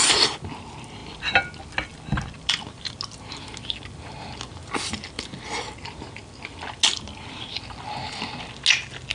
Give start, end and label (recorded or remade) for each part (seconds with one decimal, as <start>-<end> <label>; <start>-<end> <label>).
0.0-9.1 recorded